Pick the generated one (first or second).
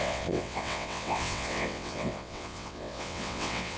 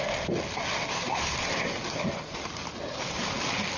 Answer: first